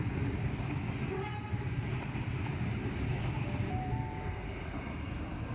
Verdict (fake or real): real